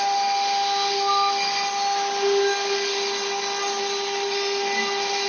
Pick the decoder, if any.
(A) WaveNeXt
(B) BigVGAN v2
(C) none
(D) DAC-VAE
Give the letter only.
C